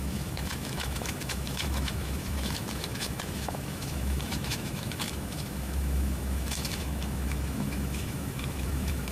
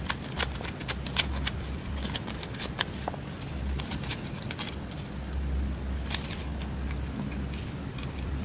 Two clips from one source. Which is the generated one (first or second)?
first